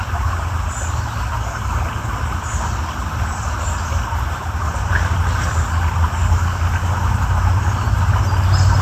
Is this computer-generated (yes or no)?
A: no